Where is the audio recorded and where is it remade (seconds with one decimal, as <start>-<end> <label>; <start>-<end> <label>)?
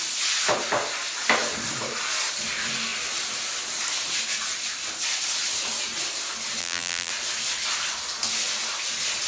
0.0-6.6 recorded; 6.6-7.1 remade; 7.1-9.3 recorded